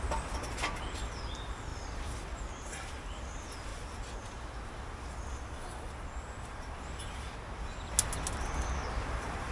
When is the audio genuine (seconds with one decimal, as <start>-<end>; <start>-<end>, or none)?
3.7-8.9